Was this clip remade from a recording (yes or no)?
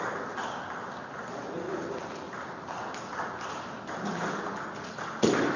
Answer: no